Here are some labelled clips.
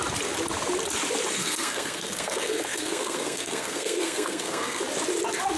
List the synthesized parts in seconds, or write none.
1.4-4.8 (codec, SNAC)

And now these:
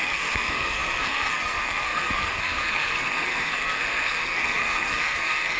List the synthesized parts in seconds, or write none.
0.0-5.6 (codec, SNAC)

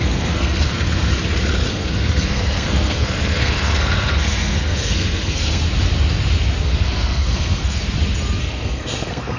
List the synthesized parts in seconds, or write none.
0.0-1.1 (codec, SNAC); 1.7-5.6; 6.6-7.8; 8.4-9.4

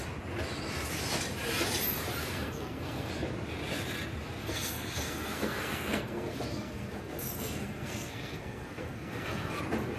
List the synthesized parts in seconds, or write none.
2.2-3.1 (codec, SNAC); 4.4-9.6

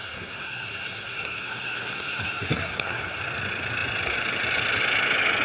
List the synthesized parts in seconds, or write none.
0.0-3.2 (codec, SNAC)